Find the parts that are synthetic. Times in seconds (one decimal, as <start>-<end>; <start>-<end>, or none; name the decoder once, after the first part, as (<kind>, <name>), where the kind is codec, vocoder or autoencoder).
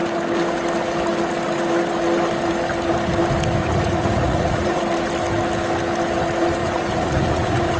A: 3.6-4.8 (vocoder, Vocos); 6.6-7.8